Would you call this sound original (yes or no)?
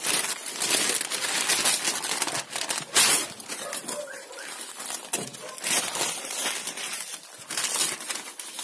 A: yes